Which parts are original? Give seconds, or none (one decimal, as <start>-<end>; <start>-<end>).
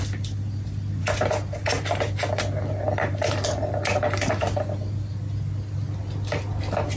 0.0-7.0